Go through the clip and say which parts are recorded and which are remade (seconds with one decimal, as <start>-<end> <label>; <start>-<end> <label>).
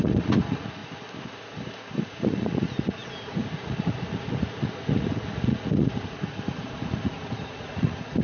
0.0-0.8 remade; 0.8-2.1 recorded; 2.1-8.2 remade